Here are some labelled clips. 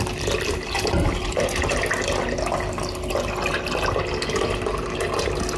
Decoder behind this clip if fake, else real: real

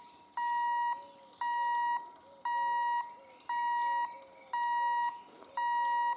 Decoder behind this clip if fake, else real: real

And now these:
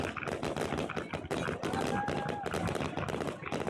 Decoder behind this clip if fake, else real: real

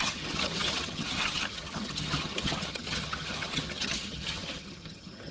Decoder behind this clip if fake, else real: fake, vocoder, HiFi-GAN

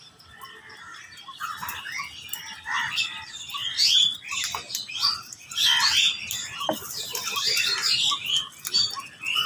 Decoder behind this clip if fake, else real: real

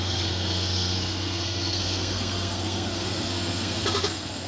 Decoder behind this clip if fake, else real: fake, codec, SNAC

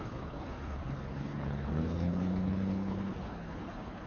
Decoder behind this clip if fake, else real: fake, codec, HILCodec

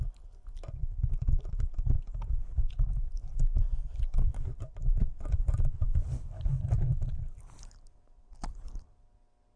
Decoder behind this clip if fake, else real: real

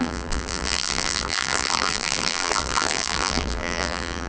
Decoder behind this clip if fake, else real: fake, vocoder, BigVGAN v2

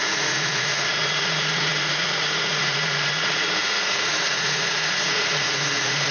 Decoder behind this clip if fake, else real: fake, vocoder, Vocos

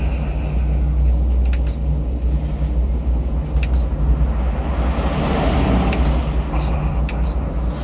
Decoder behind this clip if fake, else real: real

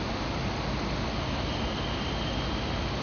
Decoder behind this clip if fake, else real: real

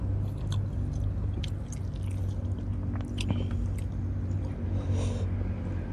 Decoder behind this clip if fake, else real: real